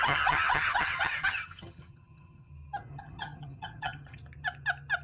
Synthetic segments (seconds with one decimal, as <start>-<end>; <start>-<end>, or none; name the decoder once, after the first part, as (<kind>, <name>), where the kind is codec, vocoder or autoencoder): 0.0-2.5 (vocoder, HiFi-GAN); 2.9-4.2